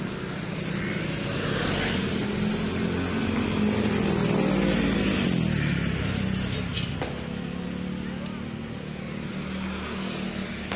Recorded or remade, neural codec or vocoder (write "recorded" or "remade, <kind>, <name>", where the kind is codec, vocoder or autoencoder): recorded